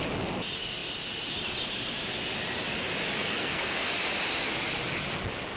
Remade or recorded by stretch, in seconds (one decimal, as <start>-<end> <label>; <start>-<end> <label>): 0.0-3.2 recorded; 3.2-3.9 remade; 3.9-5.6 recorded